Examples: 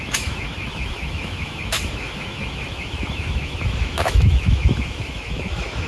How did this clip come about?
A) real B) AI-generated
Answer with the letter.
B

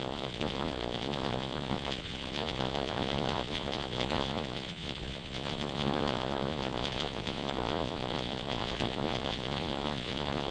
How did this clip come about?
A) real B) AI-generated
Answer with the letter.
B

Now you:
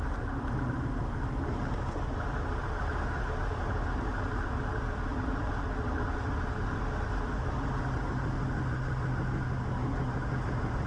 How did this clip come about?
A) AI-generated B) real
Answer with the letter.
B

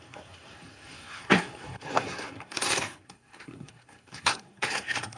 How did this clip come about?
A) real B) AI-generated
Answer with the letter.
B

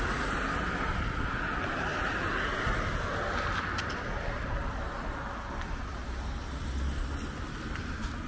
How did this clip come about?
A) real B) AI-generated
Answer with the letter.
A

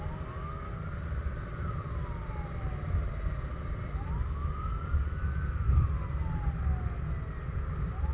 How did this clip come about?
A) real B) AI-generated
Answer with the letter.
A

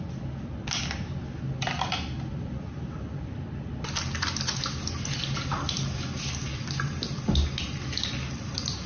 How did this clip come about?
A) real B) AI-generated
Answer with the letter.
A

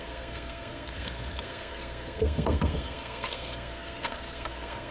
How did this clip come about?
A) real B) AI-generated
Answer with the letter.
B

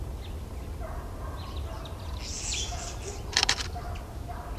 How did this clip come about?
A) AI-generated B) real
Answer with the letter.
B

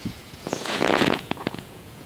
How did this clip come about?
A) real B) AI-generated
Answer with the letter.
B